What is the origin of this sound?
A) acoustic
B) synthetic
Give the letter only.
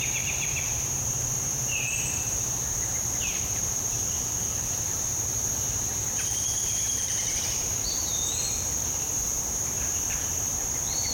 B